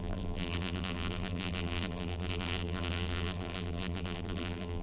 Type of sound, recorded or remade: remade